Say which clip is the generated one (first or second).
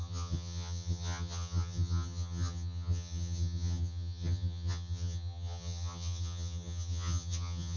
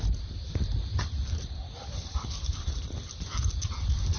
first